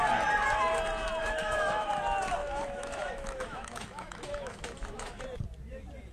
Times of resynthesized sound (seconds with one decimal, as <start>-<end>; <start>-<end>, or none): 1.2-1.9; 2.4-5.2